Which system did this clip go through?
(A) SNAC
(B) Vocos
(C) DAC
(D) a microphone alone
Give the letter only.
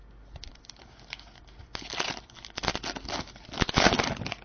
D